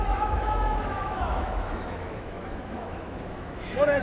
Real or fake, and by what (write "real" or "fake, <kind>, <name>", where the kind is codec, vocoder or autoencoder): fake, autoencoder, DAC-VAE